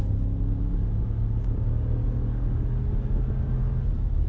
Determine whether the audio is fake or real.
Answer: real